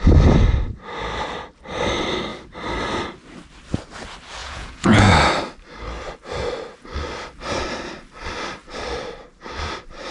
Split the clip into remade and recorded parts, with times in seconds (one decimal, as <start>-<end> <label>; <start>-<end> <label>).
0.0-4.4 recorded; 4.4-5.1 remade; 5.1-10.1 recorded